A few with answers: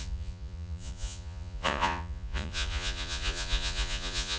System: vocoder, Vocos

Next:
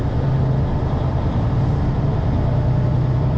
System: none